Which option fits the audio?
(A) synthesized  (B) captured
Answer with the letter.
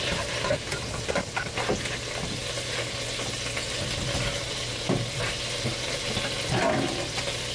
B